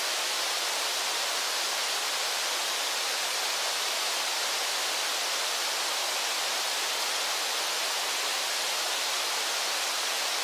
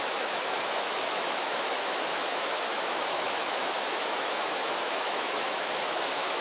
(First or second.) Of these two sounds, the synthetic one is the second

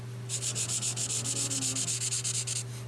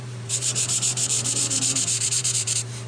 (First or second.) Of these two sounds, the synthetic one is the second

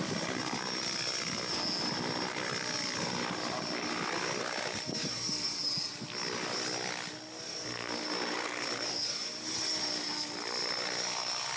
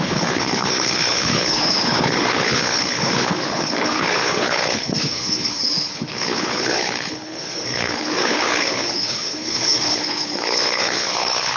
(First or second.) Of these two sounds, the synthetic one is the second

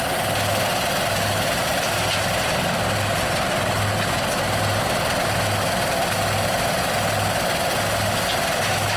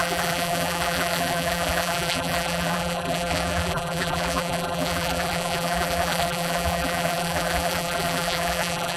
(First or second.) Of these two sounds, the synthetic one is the second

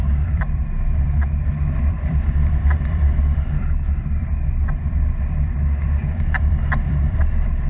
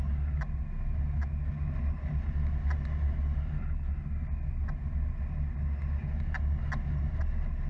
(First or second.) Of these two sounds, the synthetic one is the first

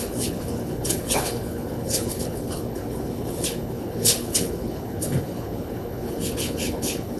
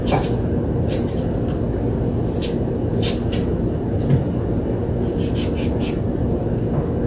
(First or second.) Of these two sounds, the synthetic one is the first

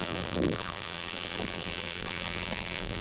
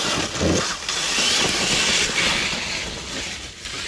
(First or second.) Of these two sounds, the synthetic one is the first